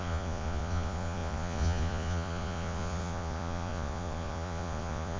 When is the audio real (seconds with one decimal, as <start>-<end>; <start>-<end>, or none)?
none